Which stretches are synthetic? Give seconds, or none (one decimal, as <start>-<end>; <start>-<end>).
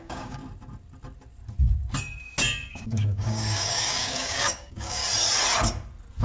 0.0-0.4; 2.7-5.0